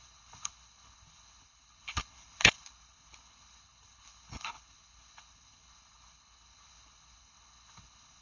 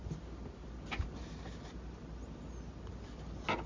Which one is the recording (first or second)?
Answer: second